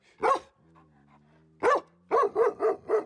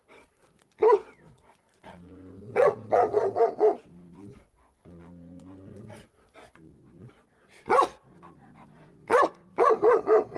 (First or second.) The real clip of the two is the first